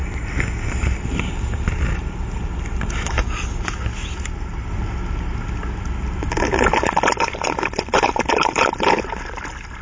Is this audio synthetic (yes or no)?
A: no